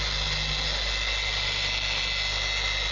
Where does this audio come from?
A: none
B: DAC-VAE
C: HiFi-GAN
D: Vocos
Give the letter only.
A